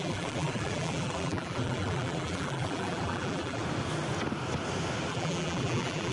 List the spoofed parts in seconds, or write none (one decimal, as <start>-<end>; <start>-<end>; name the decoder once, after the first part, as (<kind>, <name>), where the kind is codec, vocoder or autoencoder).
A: 0.0-3.6 (vocoder, BigVGAN v2); 5.1-6.1